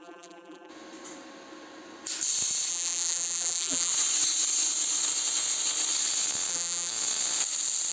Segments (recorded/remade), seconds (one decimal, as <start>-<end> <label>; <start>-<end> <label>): 0.0-0.7 remade; 0.7-2.7 recorded; 2.7-3.9 remade; 3.9-6.5 recorded; 6.5-6.9 remade; 6.9-7.9 recorded